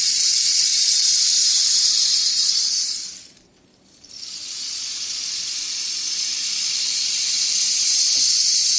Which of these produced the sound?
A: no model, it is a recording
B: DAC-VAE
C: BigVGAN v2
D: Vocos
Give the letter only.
C